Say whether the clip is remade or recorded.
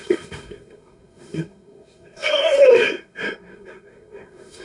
remade